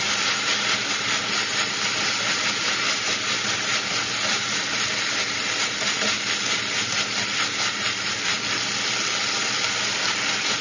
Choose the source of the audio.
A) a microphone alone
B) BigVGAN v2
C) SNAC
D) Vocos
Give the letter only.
A